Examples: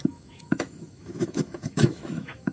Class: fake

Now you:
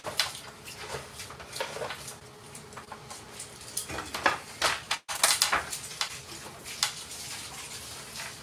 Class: real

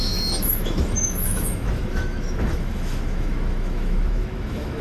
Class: fake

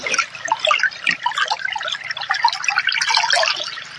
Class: real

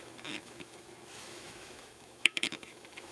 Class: fake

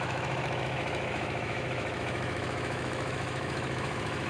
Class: fake